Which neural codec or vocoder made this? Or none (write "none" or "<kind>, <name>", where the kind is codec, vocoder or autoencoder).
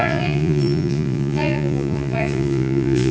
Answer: vocoder, Vocos